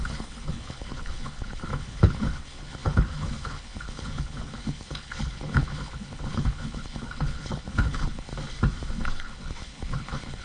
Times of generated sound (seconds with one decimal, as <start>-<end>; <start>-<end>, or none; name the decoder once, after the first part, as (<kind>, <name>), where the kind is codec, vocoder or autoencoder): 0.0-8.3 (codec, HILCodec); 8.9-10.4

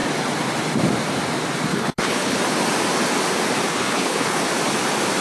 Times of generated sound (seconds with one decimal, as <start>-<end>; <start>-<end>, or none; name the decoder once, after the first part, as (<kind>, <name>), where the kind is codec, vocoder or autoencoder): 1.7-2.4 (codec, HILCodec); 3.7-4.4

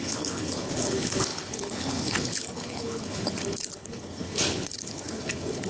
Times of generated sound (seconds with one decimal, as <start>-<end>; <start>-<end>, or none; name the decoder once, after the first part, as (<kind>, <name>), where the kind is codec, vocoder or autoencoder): 0.0-5.7 (codec, HILCodec)

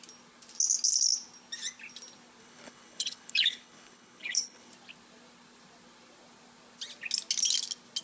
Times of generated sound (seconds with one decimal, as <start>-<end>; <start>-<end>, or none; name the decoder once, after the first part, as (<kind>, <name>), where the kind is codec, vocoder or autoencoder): 2.4-4.7 (codec, HILCodec)

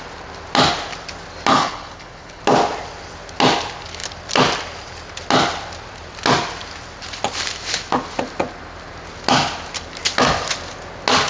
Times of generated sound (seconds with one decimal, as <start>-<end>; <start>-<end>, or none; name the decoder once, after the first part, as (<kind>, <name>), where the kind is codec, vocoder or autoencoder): 1.5-2.4 (codec, HILCodec)

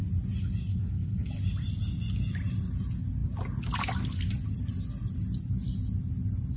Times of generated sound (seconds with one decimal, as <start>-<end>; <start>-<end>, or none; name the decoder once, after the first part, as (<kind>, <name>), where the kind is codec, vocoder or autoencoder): 0.7-1.3 (codec, HILCodec)